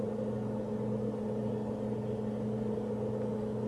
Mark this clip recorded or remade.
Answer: recorded